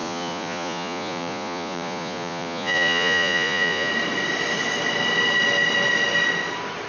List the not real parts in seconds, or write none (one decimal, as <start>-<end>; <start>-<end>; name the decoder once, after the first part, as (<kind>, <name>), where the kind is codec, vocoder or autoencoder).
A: 0.0-3.9 (vocoder, Vocos)